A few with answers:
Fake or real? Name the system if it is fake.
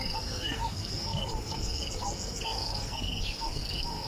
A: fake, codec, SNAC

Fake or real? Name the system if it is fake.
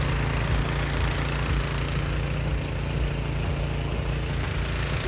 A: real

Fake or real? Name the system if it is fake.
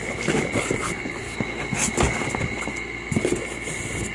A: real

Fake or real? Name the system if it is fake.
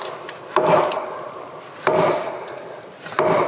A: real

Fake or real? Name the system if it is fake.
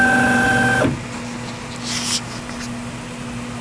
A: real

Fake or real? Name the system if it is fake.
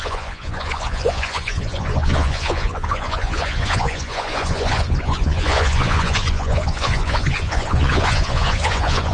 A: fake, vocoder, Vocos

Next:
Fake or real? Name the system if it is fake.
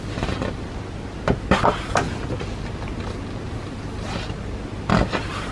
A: real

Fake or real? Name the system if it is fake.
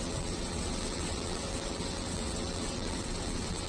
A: fake, vocoder, WaveNeXt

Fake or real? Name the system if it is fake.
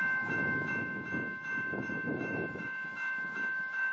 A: fake, autoencoder, DAC-VAE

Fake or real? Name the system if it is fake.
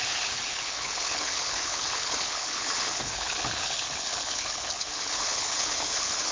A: fake, codec, HILCodec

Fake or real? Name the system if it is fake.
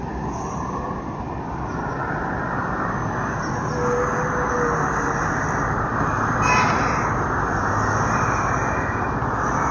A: real